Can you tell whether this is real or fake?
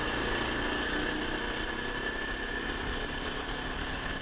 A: real